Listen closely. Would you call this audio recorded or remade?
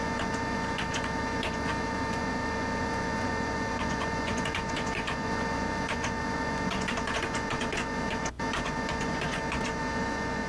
remade